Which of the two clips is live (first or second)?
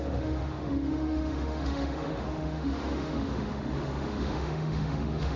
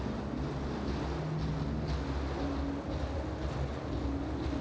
second